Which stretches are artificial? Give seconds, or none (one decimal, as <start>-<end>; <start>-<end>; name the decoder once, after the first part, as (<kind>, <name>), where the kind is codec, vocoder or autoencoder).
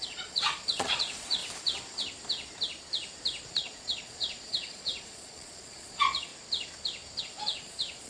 0.0-1.4 (vocoder, Vocos); 3.5-6.3; 7.2-8.1